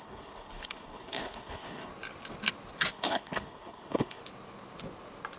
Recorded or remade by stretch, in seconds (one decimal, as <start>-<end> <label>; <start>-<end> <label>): 0.0-1.9 remade; 1.9-2.9 recorded; 2.9-4.2 remade; 4.2-5.4 recorded